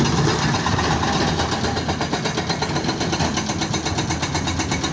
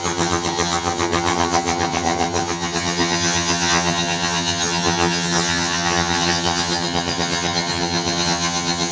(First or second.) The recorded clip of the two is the first